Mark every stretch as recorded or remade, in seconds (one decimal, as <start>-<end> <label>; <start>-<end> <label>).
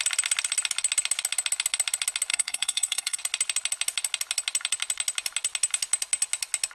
0.0-2.3 recorded; 2.3-3.2 remade; 3.2-6.7 recorded